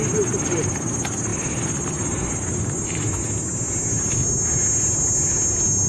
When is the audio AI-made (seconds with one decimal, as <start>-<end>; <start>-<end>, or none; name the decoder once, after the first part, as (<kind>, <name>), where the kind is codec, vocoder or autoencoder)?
none